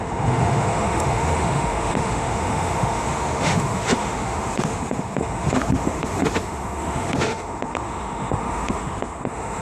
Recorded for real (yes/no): no